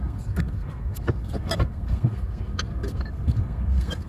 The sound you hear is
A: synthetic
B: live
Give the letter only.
A